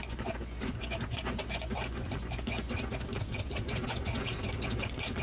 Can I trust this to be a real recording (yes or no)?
no